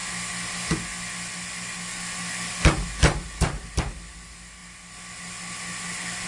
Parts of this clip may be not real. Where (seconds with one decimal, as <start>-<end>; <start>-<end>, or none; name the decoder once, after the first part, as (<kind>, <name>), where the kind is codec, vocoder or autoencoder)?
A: none